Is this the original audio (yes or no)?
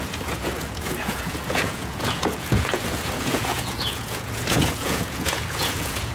no